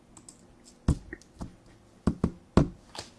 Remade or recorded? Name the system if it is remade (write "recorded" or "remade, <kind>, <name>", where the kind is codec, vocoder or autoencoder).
recorded